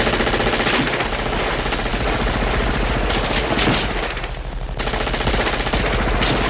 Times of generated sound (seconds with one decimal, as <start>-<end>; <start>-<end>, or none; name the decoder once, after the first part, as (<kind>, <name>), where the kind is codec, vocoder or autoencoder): none